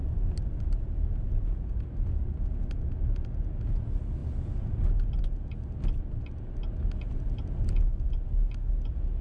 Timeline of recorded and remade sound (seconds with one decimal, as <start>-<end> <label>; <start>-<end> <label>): 0.0-9.2 recorded